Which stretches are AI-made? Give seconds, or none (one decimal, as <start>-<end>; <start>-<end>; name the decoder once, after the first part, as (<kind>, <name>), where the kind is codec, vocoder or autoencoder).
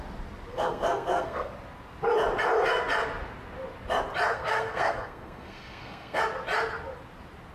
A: 0.5-1.5 (codec, SNAC); 4.3-6.2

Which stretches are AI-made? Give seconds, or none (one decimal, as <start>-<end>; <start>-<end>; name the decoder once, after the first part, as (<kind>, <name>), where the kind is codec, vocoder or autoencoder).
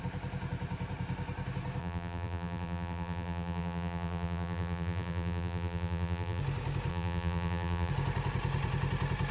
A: 1.8-6.4 (vocoder, BigVGAN v2); 6.9-7.9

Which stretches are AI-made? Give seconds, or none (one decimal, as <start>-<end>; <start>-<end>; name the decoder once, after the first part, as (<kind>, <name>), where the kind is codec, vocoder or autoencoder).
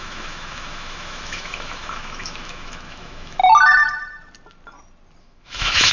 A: 0.0-3.4 (autoencoder, DAC-VAE); 5.2-5.9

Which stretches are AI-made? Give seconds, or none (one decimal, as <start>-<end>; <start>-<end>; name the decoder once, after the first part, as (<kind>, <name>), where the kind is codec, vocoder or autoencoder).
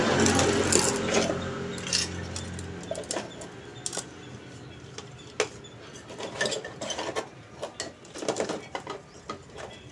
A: none